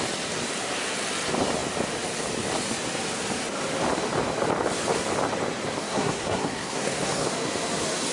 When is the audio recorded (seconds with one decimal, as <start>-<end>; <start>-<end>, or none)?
0.0-5.8; 7.3-8.1